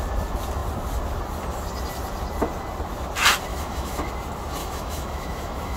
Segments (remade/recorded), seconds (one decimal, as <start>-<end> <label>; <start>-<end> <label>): 0.0-3.5 recorded; 3.5-4.1 remade; 4.1-4.6 recorded; 4.6-5.8 remade